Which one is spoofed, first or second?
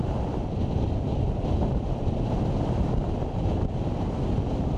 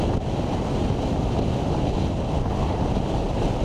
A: first